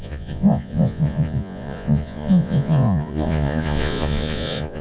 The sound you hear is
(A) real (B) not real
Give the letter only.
B